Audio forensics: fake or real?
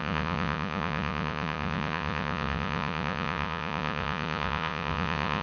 fake